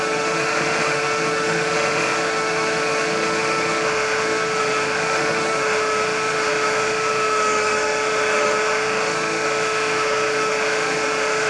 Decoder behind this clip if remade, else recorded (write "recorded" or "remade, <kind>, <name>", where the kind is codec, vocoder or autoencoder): remade, autoencoder, DAC-VAE